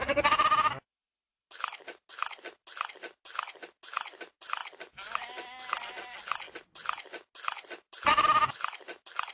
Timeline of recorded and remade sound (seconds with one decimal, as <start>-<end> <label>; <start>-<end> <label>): 0.0-9.3 recorded